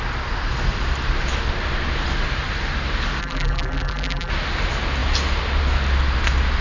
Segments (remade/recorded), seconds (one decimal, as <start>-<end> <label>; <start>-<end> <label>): 0.0-3.2 recorded; 3.2-4.3 remade; 4.3-6.6 recorded